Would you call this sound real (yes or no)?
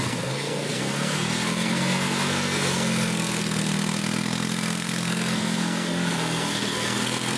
no